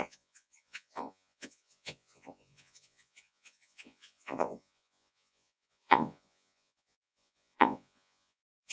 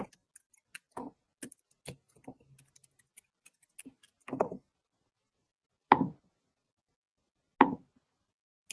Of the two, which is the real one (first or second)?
second